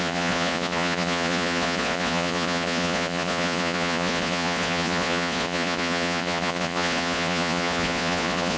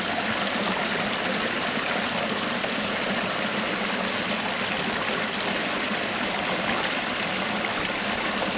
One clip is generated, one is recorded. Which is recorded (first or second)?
second